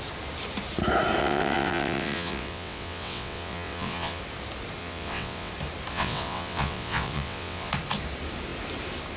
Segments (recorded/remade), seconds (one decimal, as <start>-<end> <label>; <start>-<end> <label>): 0.0-1.2 recorded; 1.2-4.2 remade; 4.2-4.8 recorded; 4.8-5.5 remade; 5.5-5.9 recorded; 5.9-7.7 remade; 7.7-9.2 recorded